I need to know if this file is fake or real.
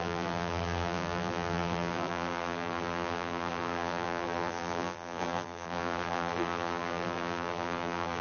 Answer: fake